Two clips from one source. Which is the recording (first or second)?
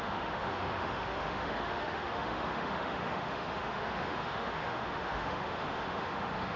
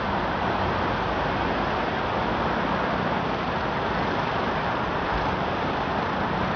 second